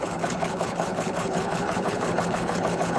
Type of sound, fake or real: fake